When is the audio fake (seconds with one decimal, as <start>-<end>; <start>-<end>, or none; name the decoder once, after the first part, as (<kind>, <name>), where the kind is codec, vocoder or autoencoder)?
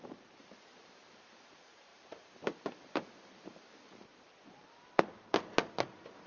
0.0-4.1 (vocoder, BigVGAN v2)